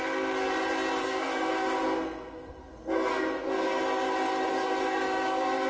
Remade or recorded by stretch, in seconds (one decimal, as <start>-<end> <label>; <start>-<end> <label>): 0.0-1.0 recorded; 1.0-3.8 remade; 3.8-4.5 recorded; 4.5-5.7 remade